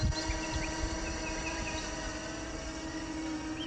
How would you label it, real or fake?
real